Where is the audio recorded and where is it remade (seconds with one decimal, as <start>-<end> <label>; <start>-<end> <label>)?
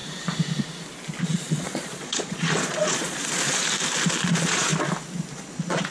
0.0-1.2 recorded; 1.2-3.6 remade; 3.6-4.3 recorded; 4.3-4.7 remade; 4.7-5.3 recorded; 5.3-5.9 remade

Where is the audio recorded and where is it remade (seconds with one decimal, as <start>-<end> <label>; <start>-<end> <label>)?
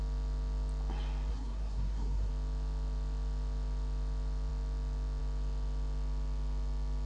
0.0-1.3 recorded; 1.3-2.3 remade; 2.3-7.1 recorded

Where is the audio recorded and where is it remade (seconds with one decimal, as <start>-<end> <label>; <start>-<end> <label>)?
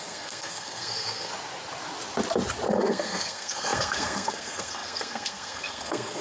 0.0-1.3 remade; 1.3-2.7 recorded; 2.7-6.2 remade